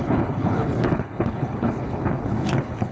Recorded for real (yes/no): no